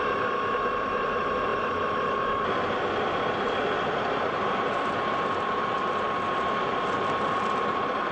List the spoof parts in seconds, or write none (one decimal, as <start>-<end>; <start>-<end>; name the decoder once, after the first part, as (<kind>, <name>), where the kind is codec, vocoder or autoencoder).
0.0-8.1 (vocoder, BigVGAN v2)